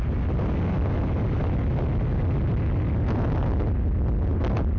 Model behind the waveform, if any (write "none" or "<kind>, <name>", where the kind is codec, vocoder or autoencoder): none